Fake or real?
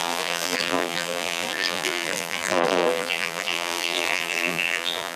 fake